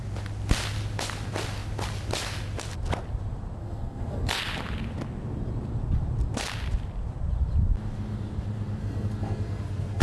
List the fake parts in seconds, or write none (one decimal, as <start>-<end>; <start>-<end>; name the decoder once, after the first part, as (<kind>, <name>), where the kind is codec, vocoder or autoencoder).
3.6-4.4 (codec, SNAC); 8.8-10.0